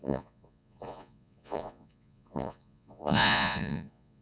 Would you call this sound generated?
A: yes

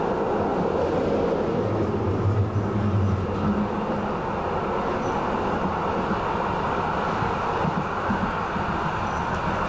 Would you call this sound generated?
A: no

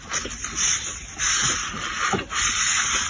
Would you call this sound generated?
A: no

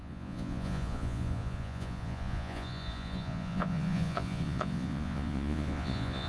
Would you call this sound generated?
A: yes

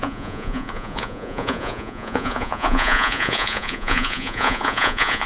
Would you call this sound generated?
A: yes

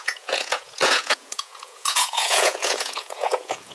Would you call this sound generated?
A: yes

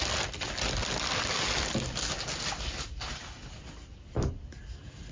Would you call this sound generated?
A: no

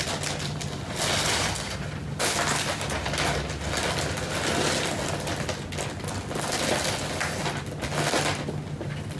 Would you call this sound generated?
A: no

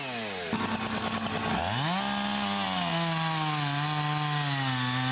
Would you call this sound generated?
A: no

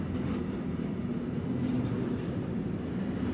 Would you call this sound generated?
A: no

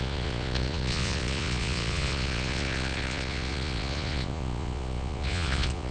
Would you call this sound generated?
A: yes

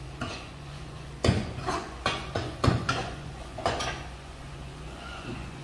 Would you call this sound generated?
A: yes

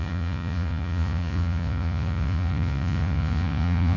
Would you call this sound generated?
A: yes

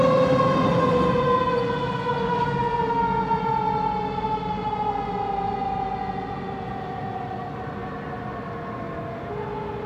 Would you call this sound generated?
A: no